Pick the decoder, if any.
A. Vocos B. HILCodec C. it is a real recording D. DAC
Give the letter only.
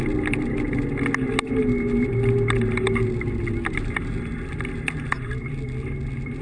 C